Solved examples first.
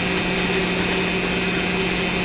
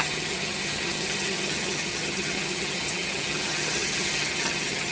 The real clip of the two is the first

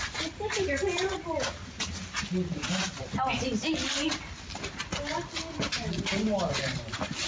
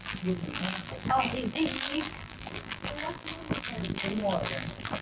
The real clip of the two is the first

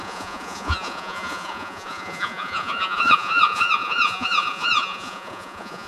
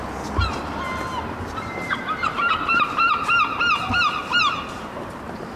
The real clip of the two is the second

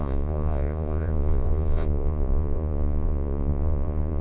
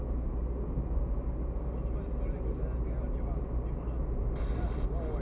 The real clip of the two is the second